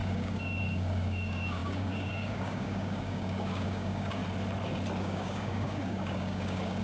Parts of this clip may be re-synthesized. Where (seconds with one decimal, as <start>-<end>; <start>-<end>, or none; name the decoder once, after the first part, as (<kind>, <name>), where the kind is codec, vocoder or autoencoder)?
0.0-4.2 (codec, DAC); 5.0-6.8